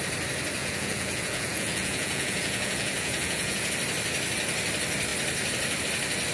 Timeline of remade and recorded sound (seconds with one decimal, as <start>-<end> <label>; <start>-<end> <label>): 0.0-0.6 recorded; 0.6-3.7 remade; 3.7-6.3 recorded